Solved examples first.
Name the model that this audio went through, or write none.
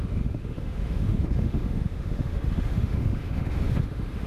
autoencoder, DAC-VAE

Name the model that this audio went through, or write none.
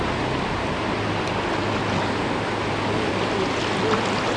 none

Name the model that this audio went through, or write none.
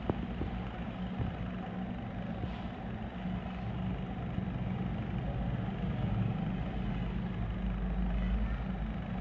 none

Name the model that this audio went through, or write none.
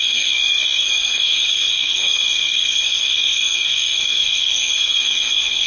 codec, SNAC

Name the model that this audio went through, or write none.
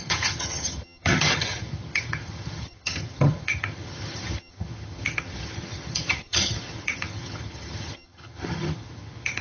vocoder, HiFi-GAN